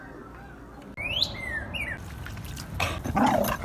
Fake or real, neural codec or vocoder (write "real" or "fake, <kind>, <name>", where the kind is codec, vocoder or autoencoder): real